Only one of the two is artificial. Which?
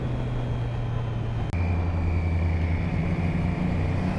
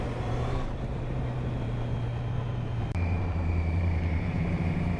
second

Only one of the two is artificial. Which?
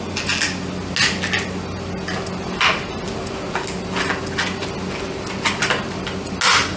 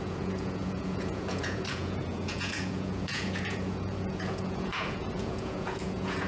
second